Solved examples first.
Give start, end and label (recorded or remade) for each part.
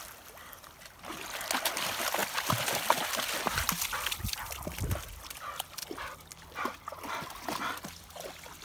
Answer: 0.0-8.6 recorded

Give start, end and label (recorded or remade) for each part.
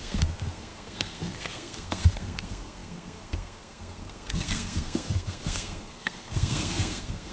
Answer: 0.0-7.3 remade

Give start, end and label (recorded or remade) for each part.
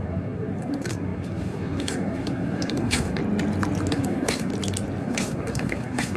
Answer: 0.0-3.2 remade; 3.2-3.9 recorded; 3.9-4.5 remade; 4.5-5.0 recorded; 5.0-6.2 remade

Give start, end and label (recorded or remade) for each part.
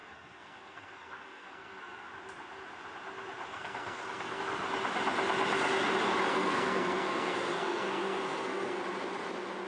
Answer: 0.0-2.1 remade; 2.1-3.5 recorded; 3.5-4.4 remade; 4.4-6.3 recorded; 6.3-8.8 remade; 8.8-9.7 recorded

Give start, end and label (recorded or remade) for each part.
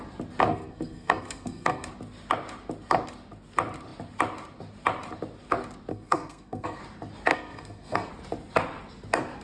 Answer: 0.0-0.5 recorded; 0.5-1.9 remade; 1.9-5.9 recorded; 5.9-6.8 remade; 6.8-7.3 recorded; 7.3-8.1 remade; 8.1-9.4 recorded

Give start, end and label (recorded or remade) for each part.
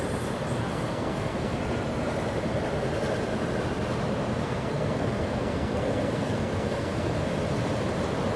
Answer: 0.0-0.7 recorded; 0.7-1.6 remade; 1.6-4.4 recorded; 4.4-7.4 remade; 7.4-8.4 recorded